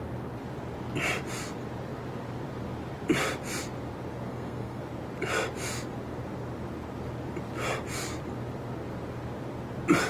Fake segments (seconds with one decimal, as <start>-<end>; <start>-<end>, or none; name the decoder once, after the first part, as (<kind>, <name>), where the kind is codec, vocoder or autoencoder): 4.3-4.8 (codec, SNAC)